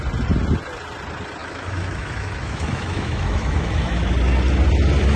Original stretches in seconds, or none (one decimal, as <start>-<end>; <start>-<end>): 0.0-1.4; 4.1-5.2